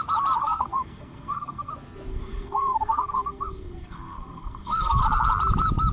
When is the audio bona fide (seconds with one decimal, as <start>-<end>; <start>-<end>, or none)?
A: 0.0-0.4; 1.7-2.1; 5.0-5.9